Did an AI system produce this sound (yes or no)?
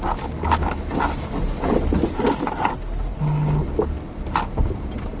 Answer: no